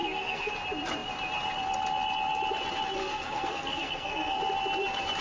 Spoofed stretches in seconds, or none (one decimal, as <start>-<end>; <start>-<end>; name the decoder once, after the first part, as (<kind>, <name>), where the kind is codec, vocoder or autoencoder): 0.0-0.5 (codec, SNAC); 3.0-4.4